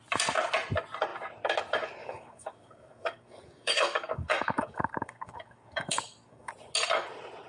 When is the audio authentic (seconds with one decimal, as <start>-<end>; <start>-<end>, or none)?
0.0-2.0; 6.5-7.5

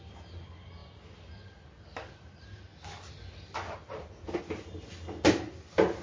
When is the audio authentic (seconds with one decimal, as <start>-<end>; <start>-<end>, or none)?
0.0-6.0

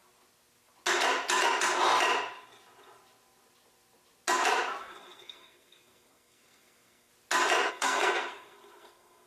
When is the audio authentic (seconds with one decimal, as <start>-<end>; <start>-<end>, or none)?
0.0-4.8; 7.1-7.7

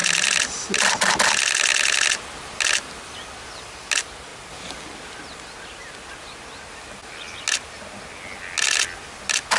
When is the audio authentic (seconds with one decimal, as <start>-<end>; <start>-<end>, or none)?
0.0-9.6

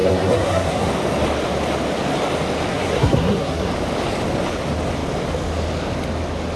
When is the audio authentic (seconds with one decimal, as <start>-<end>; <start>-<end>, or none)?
0.9-2.7; 3.7-6.6

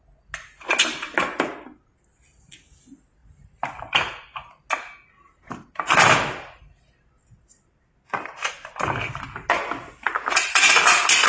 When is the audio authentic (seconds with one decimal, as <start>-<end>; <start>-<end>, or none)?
0.0-0.9; 1.5-3.2; 4.1-10.0; 10.8-11.3